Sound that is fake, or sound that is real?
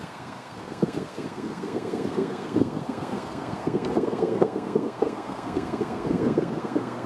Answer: fake